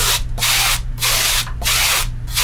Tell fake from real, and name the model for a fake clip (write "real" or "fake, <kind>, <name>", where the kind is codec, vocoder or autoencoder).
real